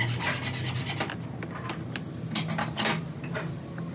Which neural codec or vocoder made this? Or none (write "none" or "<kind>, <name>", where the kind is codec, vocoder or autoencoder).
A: none